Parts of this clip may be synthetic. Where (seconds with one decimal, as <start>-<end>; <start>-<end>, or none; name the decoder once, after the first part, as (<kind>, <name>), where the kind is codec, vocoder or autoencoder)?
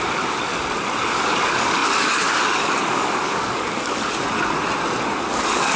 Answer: 0.0-0.5 (codec, DAC); 1.0-4.0; 5.3-5.8